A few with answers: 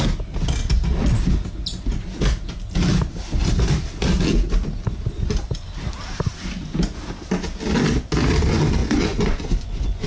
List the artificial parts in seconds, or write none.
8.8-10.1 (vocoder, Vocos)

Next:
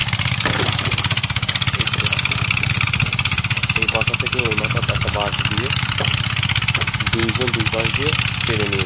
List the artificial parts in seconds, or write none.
none

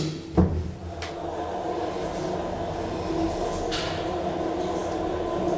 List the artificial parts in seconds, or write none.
none

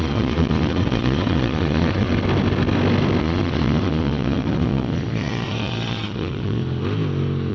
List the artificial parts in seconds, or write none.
0.0-2.1 (vocoder, Vocos); 3.2-6.6

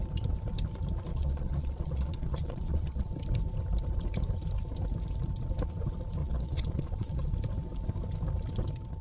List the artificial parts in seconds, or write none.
1.1-3.1 (vocoder, Vocos); 6.2-7.3